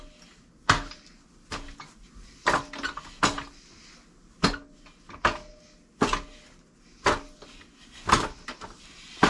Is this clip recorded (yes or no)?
yes